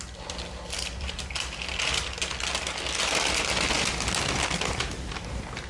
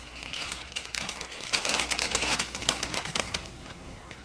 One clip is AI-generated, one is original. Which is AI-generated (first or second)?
second